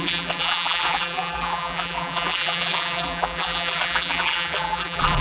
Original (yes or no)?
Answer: no